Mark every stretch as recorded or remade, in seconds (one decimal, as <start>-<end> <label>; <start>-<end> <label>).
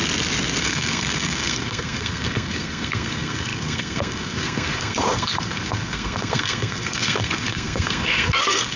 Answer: 0.0-0.6 recorded; 0.6-8.8 remade